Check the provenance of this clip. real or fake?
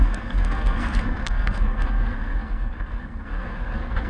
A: fake